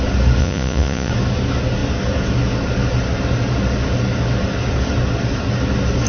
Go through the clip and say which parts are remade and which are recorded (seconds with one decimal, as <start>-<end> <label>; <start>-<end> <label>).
0.0-0.4 recorded; 0.4-1.1 remade; 1.1-6.1 recorded